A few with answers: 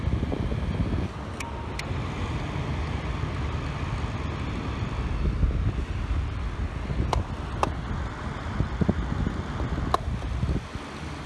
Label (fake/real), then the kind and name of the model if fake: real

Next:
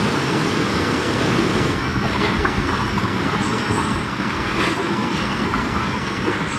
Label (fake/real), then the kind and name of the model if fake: fake, codec, SNAC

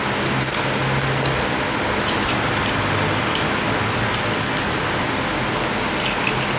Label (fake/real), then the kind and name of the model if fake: real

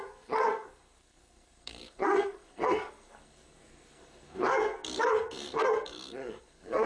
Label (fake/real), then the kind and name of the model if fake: fake, codec, SNAC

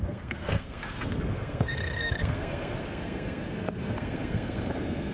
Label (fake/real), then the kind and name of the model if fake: fake, codec, SNAC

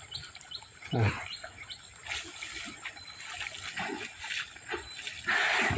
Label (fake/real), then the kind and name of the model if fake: real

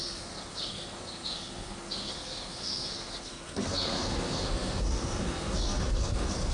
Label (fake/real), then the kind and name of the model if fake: fake, codec, SNAC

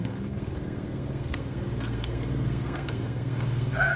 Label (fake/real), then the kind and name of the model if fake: fake, codec, SNAC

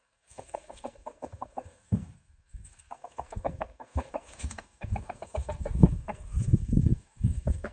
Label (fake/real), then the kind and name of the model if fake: fake, codec, SNAC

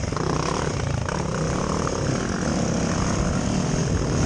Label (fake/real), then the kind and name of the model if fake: real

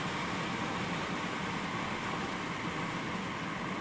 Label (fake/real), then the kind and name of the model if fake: real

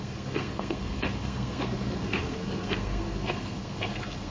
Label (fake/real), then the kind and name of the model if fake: fake, codec, SNAC